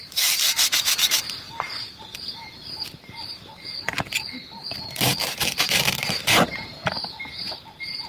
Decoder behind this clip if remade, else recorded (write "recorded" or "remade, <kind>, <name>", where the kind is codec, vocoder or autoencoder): remade, vocoder, BigVGAN v2